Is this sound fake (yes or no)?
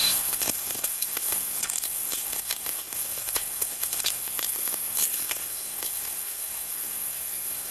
yes